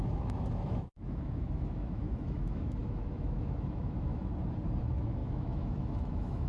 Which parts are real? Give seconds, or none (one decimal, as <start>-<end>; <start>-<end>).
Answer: 4.3-4.8